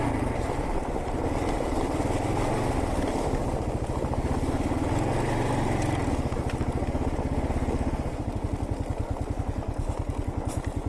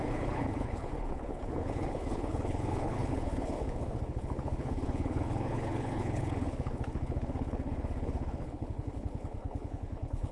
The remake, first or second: second